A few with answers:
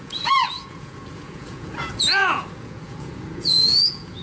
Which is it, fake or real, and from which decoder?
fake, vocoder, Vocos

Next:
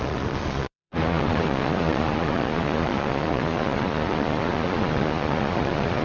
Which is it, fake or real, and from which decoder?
fake, vocoder, Vocos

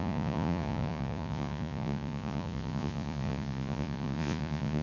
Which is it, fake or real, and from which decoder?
fake, vocoder, Vocos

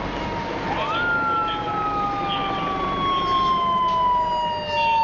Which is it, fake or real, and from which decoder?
real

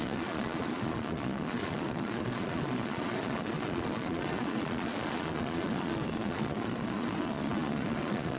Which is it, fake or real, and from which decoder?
fake, vocoder, Vocos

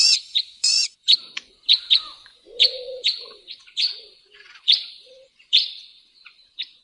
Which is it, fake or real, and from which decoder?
fake, vocoder, Vocos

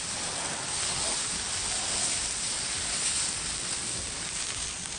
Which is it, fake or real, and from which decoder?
real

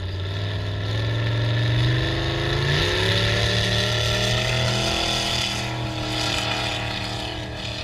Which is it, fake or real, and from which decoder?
real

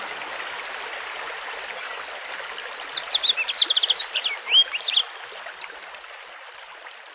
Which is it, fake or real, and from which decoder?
real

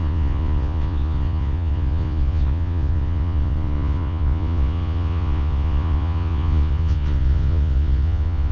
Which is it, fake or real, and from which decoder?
fake, vocoder, Vocos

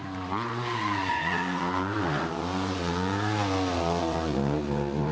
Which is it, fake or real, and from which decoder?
fake, vocoder, Vocos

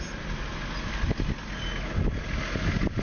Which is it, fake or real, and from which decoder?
real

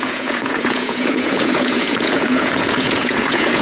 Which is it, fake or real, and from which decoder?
fake, vocoder, Vocos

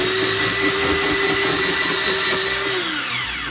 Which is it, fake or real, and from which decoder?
real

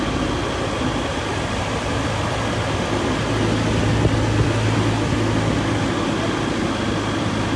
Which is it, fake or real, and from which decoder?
real